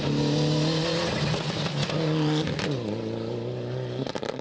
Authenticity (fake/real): real